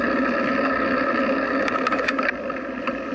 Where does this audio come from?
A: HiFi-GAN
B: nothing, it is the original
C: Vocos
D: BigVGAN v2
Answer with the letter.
B